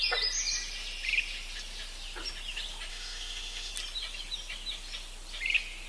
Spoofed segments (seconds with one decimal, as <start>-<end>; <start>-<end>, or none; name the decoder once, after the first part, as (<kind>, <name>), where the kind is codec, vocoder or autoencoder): 2.9-3.7 (autoencoder, DAC-VAE)

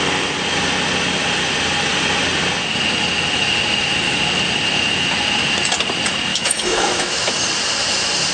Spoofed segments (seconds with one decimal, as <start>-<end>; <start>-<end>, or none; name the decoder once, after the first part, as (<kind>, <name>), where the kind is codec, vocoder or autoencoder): 6.3-7.3 (autoencoder, DAC-VAE)